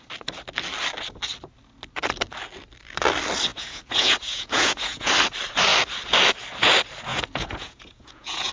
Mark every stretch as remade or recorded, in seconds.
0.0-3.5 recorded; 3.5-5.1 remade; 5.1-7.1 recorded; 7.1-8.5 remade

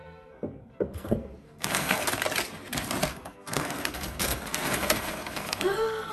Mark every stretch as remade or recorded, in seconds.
0.0-2.1 remade; 2.1-3.1 recorded; 3.1-6.1 remade

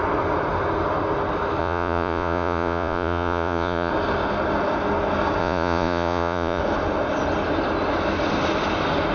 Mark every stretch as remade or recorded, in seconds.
0.0-1.6 recorded; 1.6-3.9 remade; 3.9-5.4 recorded; 5.4-6.6 remade; 6.6-9.1 recorded

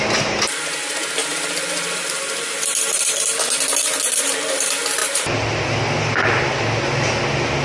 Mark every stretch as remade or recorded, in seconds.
0.0-1.2 recorded; 1.2-3.4 remade; 3.4-5.0 recorded; 5.0-6.0 remade; 6.0-7.6 recorded

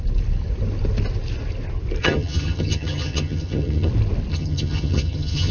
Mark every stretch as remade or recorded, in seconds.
0.0-2.0 recorded; 2.0-3.9 remade; 3.9-4.3 recorded; 4.3-5.5 remade

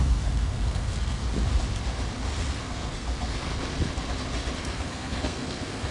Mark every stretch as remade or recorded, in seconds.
0.0-1.2 remade; 1.2-2.6 recorded; 2.6-3.5 remade; 3.5-4.6 recorded; 4.6-5.9 remade

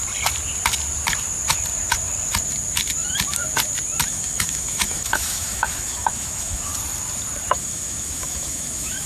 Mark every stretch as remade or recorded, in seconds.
0.0-4.1 recorded; 4.1-6.7 remade; 6.7-7.6 recorded; 7.6-9.1 remade

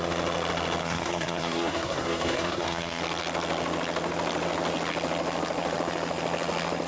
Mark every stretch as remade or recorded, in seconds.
0.0-0.8 recorded; 0.8-3.0 remade; 3.0-6.9 recorded